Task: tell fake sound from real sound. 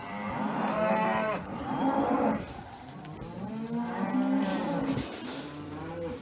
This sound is fake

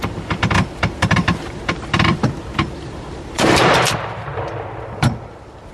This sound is fake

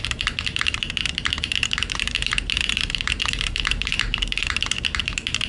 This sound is fake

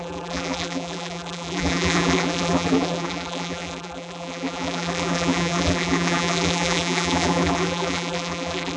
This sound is fake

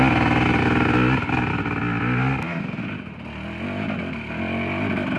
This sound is real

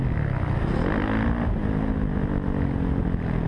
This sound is real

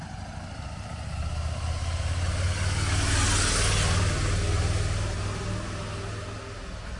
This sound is real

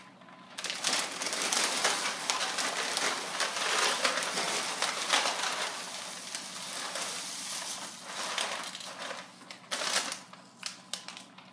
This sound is real